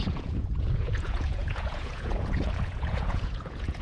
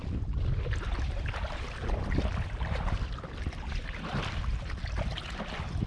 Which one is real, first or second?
second